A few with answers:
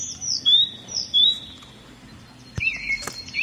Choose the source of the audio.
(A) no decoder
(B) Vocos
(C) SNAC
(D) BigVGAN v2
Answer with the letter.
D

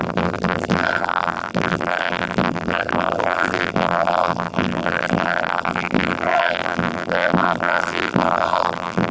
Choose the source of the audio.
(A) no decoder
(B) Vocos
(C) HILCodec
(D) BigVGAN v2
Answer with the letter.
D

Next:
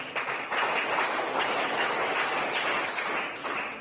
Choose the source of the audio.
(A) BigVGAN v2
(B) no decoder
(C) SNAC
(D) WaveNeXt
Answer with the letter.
B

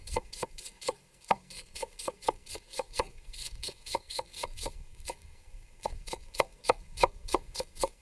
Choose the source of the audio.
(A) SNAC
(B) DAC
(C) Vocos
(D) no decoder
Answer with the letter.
A